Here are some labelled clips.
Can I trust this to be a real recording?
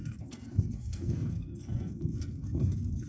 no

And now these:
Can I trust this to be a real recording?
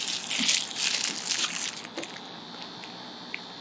yes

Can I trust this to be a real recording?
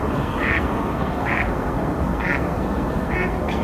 no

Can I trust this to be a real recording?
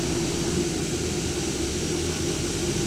yes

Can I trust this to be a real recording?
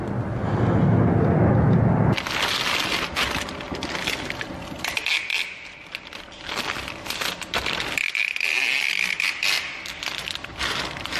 yes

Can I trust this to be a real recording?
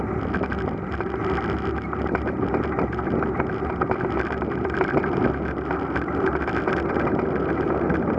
yes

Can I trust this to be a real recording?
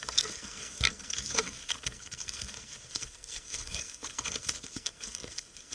no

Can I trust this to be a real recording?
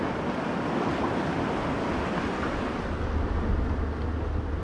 yes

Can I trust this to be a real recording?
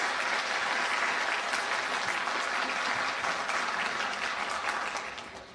yes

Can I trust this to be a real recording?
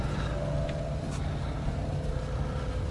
yes